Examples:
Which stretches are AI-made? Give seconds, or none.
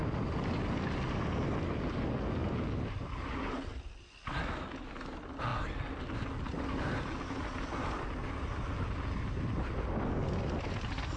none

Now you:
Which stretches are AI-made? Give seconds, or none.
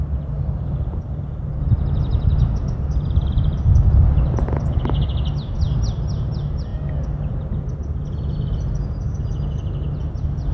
none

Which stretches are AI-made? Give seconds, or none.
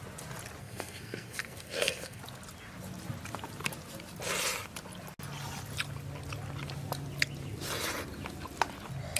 0.6-2.2 (codec, SNAC)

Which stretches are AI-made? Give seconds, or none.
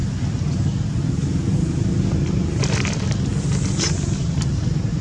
none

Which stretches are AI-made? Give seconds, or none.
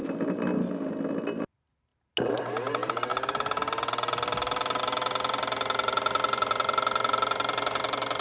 none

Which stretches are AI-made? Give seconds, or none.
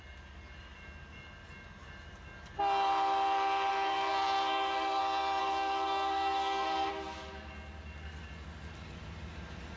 3.7-5.0 (codec, SNAC); 5.4-6.9